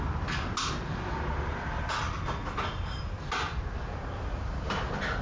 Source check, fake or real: real